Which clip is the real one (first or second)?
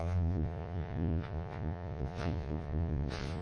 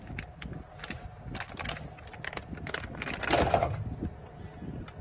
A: second